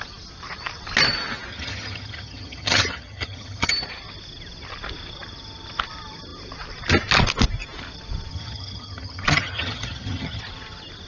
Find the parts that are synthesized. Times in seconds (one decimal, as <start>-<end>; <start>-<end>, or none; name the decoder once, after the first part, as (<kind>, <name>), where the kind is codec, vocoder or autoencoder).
1.5-3.7 (vocoder, HiFi-GAN); 8.3-10.4